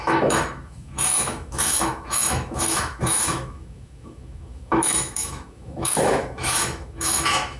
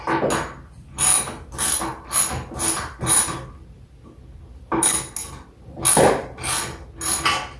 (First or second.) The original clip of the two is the second